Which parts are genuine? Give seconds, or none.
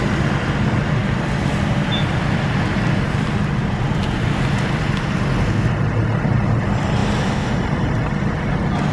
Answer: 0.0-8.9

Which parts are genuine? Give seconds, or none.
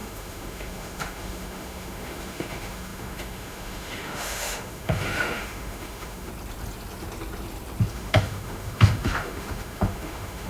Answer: 6.3-7.9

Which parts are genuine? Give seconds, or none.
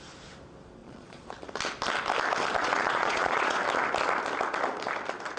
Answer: 0.0-0.8; 1.3-2.6; 3.6-5.4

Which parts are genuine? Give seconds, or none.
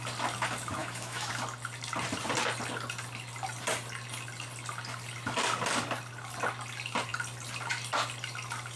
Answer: 0.0-0.8; 1.3-8.8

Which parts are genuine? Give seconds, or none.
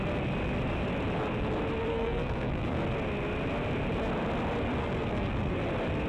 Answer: 0.0-1.9; 2.8-4.8; 5.6-6.1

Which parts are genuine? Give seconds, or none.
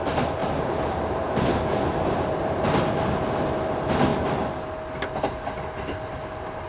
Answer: 0.0-0.4; 3.3-6.7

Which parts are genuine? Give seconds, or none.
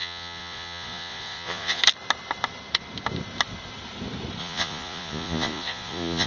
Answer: 1.8-4.4